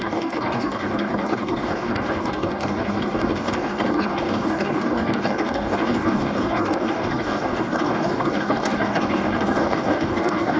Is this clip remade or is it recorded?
remade